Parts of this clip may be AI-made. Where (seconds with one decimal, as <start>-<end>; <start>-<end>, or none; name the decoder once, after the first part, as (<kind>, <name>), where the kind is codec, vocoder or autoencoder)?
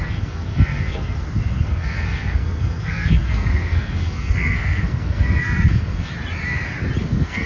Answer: 0.0-6.1 (codec, SNAC); 7.0-7.5